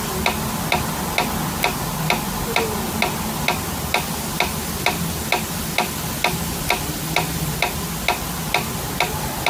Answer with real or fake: real